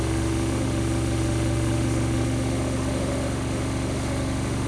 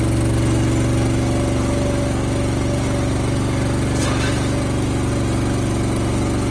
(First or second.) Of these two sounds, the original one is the second